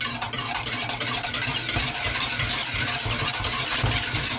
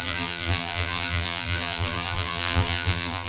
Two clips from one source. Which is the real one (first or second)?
first